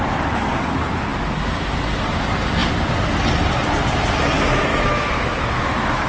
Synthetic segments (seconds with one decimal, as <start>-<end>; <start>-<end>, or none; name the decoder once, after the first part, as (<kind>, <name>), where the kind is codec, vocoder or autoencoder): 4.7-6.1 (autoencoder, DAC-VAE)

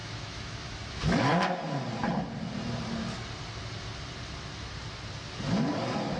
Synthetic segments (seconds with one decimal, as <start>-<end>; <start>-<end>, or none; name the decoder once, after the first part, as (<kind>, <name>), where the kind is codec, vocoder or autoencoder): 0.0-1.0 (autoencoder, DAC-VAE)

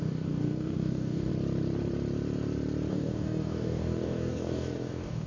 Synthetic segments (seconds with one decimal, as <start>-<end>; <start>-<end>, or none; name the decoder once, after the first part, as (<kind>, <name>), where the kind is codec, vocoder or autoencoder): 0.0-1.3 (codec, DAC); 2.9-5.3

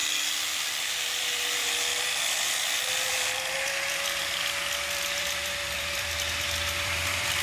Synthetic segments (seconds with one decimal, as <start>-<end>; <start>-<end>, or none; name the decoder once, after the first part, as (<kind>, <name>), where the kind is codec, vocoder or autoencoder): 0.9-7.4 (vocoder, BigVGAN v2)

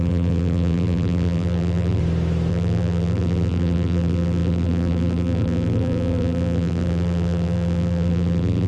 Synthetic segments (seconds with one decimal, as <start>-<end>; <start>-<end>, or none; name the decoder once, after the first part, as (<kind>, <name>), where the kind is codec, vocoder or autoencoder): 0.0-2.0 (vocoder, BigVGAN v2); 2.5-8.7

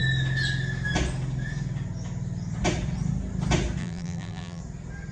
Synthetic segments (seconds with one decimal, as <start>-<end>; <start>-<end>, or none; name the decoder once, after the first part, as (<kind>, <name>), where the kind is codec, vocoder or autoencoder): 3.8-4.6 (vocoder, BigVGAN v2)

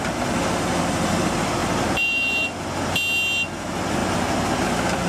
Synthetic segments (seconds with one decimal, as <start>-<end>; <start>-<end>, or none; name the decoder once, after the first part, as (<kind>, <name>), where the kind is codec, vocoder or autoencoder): 1.6-2.6 (vocoder, BigVGAN v2)